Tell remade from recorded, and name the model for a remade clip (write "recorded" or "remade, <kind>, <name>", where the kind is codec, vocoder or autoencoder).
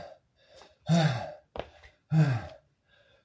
recorded